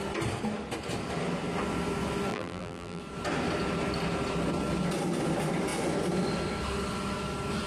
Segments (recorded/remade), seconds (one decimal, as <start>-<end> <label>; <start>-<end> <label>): 0.0-2.3 recorded; 2.3-3.0 remade; 3.0-7.7 recorded